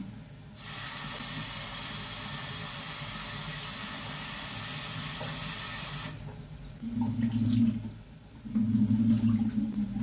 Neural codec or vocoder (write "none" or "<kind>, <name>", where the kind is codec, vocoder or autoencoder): none